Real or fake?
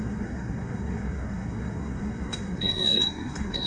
fake